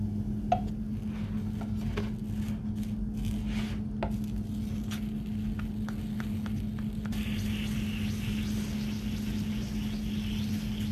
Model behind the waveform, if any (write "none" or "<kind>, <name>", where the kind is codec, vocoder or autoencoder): none